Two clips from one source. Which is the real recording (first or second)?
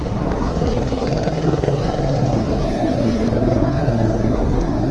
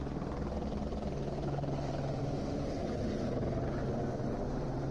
second